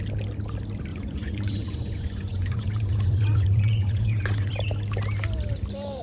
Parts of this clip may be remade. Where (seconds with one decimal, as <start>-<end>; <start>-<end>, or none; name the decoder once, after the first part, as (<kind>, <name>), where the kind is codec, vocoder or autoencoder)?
0.9-4.5 (vocoder, Vocos)